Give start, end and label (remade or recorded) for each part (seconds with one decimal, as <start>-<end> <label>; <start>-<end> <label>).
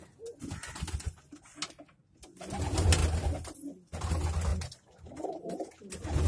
0.0-6.3 recorded